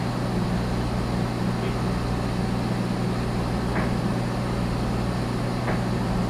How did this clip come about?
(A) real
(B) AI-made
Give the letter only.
A